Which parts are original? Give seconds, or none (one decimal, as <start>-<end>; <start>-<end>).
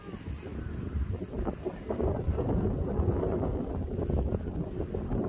0.0-5.3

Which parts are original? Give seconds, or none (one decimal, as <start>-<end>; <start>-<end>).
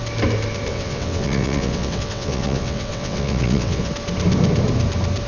0.0-0.7; 3.9-5.3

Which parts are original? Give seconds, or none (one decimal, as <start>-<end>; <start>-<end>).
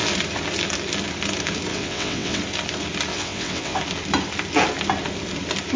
0.0-1.7; 2.4-3.1; 3.8-5.8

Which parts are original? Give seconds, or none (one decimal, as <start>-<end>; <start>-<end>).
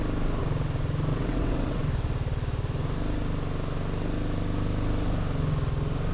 0.0-1.1; 1.8-6.1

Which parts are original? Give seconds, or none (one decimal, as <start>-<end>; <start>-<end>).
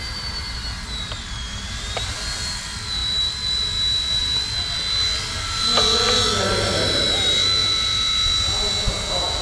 0.0-9.4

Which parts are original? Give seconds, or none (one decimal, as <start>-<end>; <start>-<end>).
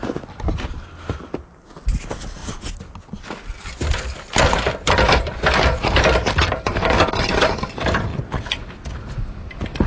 0.0-8.1; 8.7-9.9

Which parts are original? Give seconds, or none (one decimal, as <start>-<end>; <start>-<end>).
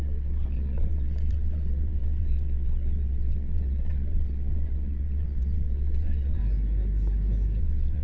6.4-7.6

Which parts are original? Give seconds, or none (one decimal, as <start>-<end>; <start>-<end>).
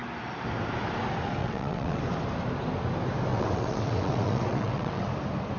0.0-1.4; 2.0-3.3; 5.1-5.6